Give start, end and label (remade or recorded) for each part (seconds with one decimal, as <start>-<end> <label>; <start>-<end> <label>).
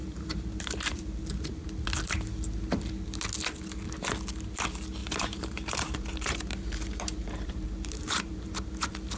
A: 0.0-1.3 remade; 1.3-5.0 recorded; 5.0-8.4 remade; 8.4-9.2 recorded